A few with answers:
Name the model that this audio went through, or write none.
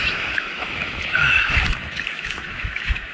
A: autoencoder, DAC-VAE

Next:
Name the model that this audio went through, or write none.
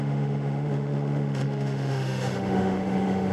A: autoencoder, DAC-VAE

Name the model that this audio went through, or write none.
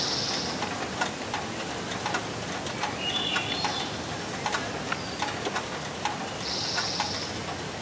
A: none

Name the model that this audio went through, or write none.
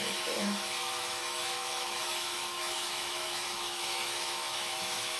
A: autoencoder, DAC-VAE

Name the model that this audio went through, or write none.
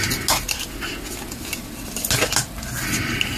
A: none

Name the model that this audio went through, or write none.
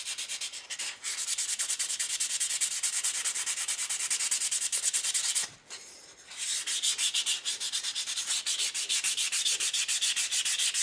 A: none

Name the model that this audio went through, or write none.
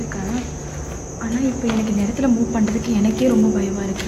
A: none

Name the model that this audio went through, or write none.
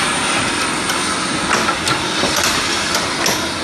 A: none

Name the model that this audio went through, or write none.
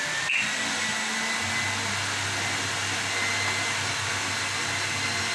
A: none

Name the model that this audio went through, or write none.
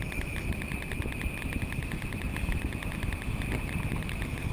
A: none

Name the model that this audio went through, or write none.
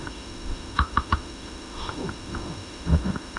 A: autoencoder, DAC-VAE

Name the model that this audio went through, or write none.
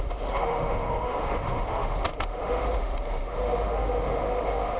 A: autoencoder, DAC-VAE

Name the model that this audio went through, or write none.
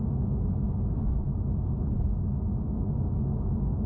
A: autoencoder, DAC-VAE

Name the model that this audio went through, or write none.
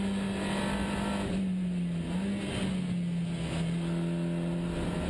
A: none